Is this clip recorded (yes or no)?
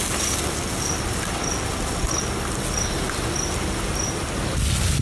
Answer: yes